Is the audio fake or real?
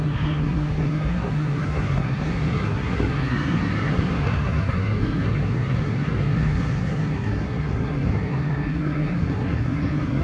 fake